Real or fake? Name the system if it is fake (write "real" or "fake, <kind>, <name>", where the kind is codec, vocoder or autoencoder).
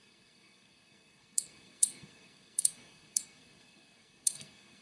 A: fake, codec, SNAC